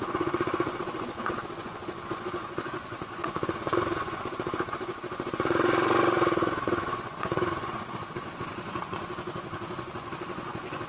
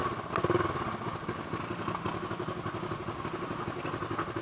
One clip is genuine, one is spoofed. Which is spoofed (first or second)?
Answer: first